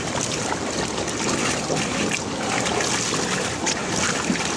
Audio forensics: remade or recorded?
recorded